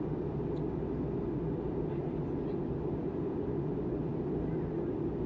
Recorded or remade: recorded